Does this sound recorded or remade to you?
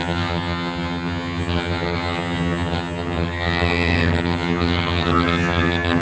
remade